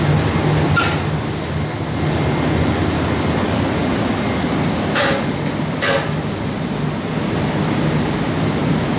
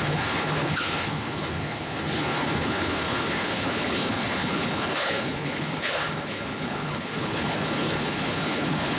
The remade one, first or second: second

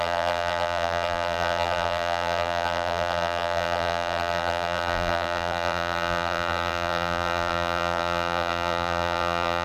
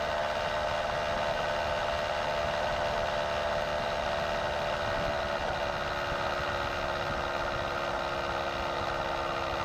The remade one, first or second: first